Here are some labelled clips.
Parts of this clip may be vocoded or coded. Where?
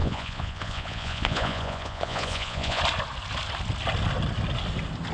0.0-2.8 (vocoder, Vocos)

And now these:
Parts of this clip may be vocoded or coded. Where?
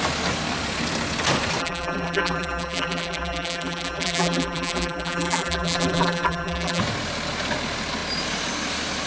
1.6-6.8 (vocoder, BigVGAN v2)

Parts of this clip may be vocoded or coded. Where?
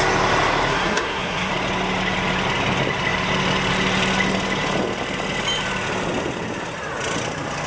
0.7-1.5 (codec, SNAC)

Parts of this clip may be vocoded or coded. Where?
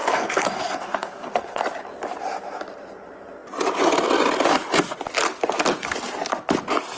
0.0-1.6 (codec, SNAC)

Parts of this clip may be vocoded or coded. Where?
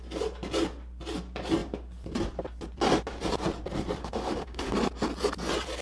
4.0-4.7 (autoencoder, DAC-VAE)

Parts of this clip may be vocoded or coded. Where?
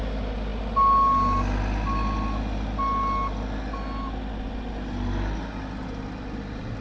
none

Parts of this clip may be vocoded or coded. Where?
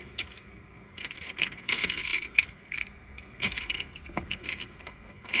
0.0-5.4 (codec, SNAC)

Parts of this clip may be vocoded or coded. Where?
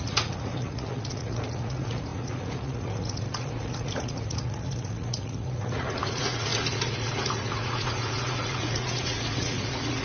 0.0-10.0 (vocoder, Vocos)